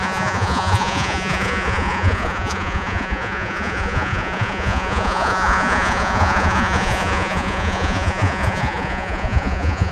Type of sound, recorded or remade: remade